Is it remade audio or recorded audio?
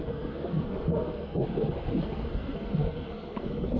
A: remade